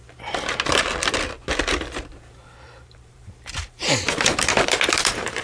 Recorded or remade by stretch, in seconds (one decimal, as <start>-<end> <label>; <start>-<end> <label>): 0.0-2.1 recorded; 2.1-5.4 remade